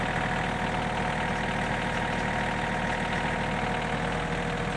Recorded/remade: recorded